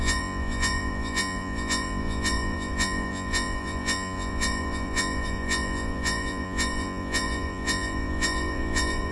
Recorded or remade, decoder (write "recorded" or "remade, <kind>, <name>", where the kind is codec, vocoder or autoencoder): remade, vocoder, Vocos